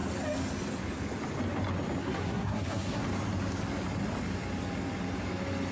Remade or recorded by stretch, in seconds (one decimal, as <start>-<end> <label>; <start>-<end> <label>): 0.0-2.0 recorded; 2.0-3.0 remade; 3.0-5.7 recorded